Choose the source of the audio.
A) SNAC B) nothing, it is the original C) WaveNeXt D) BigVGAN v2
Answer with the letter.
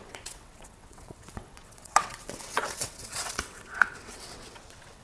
C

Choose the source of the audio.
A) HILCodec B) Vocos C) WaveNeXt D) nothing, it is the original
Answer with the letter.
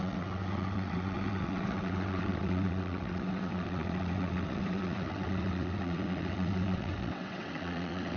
C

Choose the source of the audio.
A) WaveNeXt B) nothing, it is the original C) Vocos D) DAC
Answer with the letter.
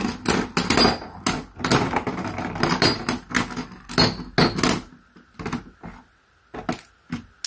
B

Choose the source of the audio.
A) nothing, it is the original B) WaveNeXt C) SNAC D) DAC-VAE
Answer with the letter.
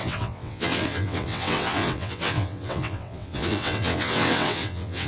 B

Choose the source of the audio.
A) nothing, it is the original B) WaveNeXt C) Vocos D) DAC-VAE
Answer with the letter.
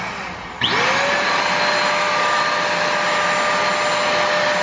A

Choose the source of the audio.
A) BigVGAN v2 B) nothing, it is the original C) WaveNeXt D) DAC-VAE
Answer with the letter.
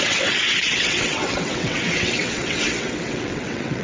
C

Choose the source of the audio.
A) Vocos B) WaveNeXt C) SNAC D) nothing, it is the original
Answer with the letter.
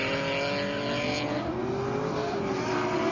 D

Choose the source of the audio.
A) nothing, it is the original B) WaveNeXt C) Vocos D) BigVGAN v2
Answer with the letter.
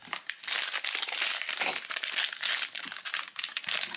A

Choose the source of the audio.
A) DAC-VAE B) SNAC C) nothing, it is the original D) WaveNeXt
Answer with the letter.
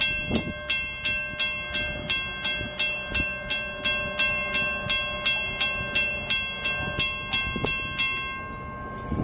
C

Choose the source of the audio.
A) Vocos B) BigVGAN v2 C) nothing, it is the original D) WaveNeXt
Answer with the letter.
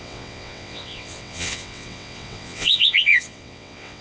D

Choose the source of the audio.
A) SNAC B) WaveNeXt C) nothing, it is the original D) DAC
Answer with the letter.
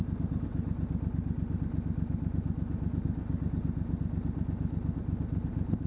C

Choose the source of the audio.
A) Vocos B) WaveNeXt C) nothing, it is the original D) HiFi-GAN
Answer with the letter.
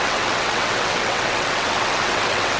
B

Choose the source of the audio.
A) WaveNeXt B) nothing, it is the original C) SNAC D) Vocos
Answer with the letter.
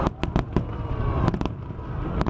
B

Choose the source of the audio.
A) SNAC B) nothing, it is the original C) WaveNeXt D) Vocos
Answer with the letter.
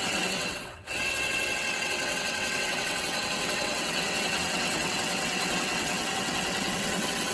C